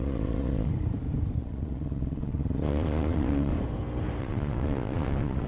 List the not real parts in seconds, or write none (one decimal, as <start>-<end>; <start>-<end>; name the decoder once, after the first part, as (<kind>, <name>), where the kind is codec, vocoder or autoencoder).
0.0-0.7 (vocoder, Vocos); 1.4-3.5; 4.2-5.5